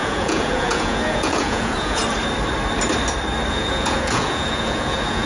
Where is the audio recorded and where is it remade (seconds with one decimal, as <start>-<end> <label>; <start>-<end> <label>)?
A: 0.0-2.0 remade; 2.0-3.5 recorded; 3.5-5.3 remade